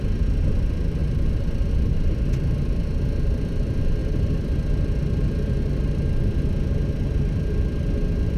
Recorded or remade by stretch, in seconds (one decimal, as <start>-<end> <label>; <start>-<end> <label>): 0.0-1.0 recorded; 1.0-1.7 remade; 1.7-4.0 recorded; 4.0-5.6 remade; 5.6-8.4 recorded